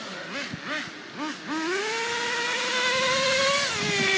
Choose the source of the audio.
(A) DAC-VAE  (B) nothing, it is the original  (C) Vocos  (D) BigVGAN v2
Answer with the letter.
B